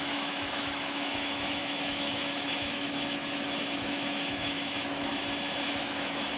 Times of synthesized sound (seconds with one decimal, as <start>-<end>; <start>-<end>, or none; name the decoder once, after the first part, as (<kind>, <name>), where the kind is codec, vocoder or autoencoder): 0.0-5.1 (autoencoder, DAC-VAE); 5.8-6.4